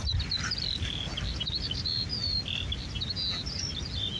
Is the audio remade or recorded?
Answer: recorded